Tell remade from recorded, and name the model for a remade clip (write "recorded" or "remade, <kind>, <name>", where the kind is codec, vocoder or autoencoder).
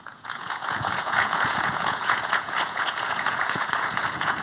remade, vocoder, Vocos